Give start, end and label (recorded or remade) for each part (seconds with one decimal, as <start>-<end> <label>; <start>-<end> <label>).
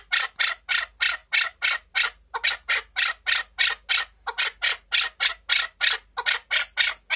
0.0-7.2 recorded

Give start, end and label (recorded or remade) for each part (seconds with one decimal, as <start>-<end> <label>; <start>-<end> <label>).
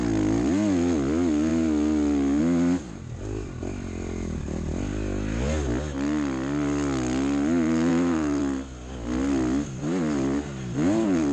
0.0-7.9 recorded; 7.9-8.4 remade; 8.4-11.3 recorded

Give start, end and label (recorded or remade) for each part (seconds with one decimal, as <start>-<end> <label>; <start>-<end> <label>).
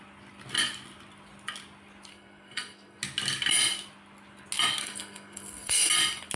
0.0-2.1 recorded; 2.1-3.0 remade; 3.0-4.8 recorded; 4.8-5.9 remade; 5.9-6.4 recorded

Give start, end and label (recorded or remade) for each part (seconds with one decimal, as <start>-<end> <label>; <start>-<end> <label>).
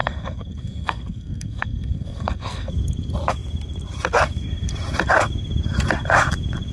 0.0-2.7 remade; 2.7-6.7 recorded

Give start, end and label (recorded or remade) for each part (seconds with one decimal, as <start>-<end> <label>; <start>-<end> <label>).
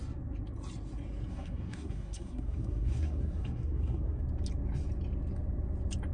0.0-1.3 recorded; 1.3-4.2 remade; 4.2-6.1 recorded